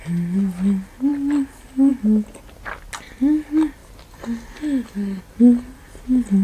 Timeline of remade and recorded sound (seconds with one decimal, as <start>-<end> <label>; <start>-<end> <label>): 0.0-6.4 recorded